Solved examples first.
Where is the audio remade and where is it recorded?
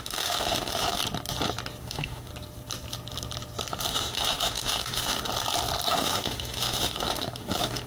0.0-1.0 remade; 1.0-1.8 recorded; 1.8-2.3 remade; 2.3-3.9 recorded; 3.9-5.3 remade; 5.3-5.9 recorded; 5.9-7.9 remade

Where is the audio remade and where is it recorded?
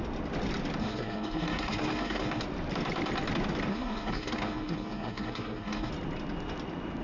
0.0-0.8 recorded; 0.8-2.4 remade; 2.4-3.7 recorded; 3.7-5.9 remade; 5.9-7.0 recorded